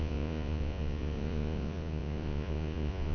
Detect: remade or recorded remade